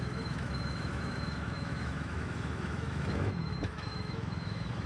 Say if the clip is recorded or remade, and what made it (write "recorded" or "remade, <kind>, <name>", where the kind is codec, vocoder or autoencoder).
remade, autoencoder, DAC-VAE